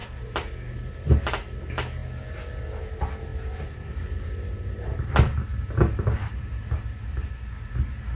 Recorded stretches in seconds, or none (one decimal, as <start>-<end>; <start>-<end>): 0.0-8.1